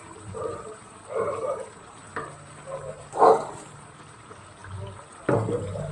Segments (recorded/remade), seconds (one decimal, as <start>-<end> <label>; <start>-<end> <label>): 0.0-2.0 remade; 2.0-2.7 recorded; 2.7-4.6 remade; 4.6-5.5 recorded; 5.5-5.9 remade